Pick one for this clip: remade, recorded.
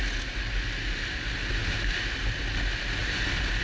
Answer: recorded